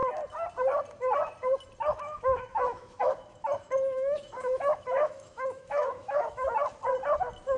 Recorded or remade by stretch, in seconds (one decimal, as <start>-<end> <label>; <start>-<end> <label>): 0.0-1.9 recorded; 1.9-6.5 remade; 6.5-7.6 recorded